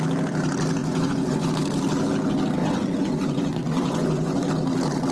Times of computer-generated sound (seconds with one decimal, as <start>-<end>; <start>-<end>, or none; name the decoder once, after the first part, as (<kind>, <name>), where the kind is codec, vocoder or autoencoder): 0.8-1.5 (vocoder, Vocos); 2.6-4.5